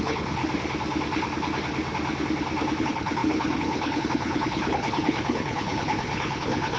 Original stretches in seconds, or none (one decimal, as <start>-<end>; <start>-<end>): 0.4-2.8